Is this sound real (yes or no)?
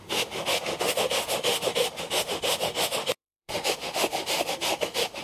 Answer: no